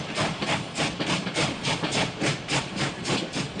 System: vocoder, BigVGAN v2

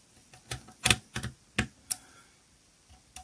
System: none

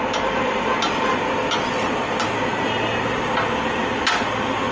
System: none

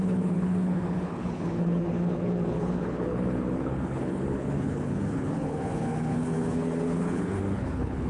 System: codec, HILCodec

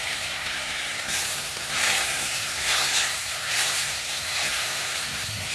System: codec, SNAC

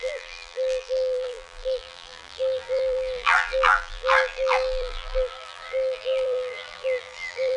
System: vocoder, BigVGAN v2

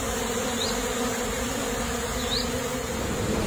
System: none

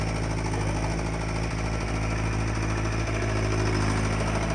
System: none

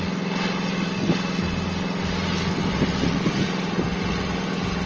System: none